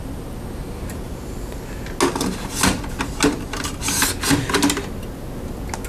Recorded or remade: recorded